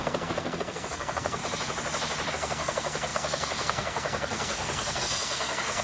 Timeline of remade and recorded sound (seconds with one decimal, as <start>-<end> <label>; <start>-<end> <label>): 0.0-1.4 remade; 1.4-2.3 recorded; 2.3-5.8 remade